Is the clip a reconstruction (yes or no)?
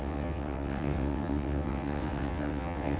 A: yes